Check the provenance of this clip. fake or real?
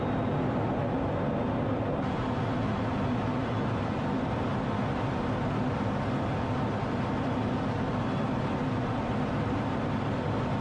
real